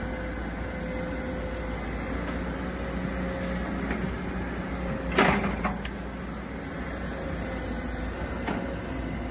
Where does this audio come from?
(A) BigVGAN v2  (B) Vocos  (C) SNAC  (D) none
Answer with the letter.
D